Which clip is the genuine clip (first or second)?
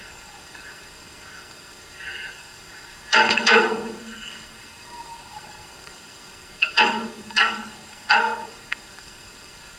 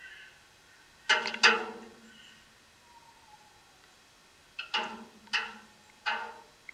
second